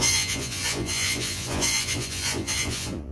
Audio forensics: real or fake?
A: fake